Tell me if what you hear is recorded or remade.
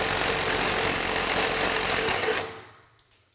recorded